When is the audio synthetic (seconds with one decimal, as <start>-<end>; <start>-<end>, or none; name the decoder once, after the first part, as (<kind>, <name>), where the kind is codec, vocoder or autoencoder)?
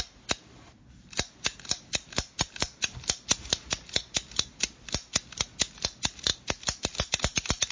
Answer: none